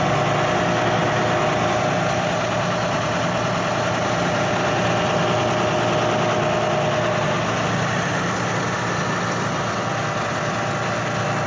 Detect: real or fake real